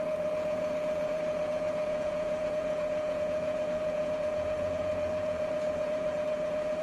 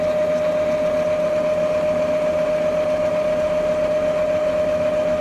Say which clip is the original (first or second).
second